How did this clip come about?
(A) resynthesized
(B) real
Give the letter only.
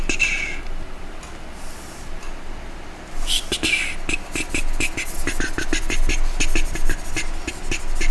B